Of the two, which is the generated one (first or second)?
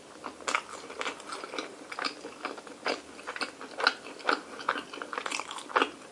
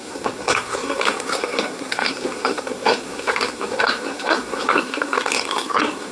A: second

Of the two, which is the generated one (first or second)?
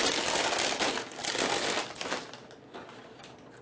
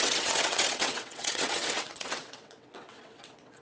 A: second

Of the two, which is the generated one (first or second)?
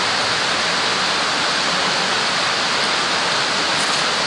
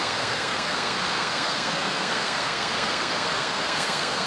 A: second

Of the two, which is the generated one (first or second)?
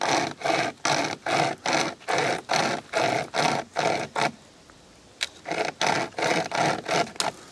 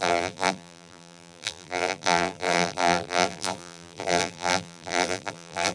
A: second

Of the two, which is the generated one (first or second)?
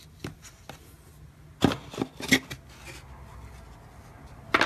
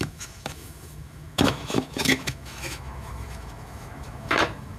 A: second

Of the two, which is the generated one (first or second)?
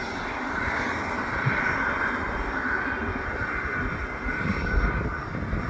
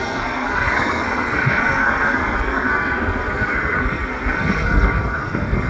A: second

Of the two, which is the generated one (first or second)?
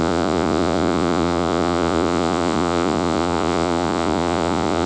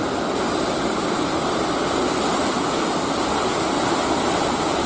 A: first